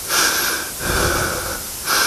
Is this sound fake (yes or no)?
no